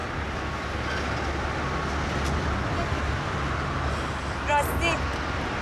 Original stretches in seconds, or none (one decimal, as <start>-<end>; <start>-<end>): 0.0-5.6